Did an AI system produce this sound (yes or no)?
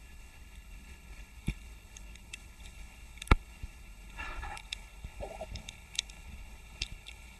yes